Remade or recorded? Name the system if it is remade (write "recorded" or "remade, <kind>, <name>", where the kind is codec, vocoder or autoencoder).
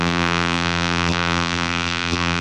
remade, vocoder, BigVGAN v2